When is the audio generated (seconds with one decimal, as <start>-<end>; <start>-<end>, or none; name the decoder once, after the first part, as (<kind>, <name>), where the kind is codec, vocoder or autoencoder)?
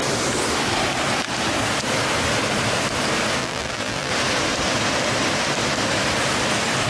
3.4-4.1 (vocoder, BigVGAN v2)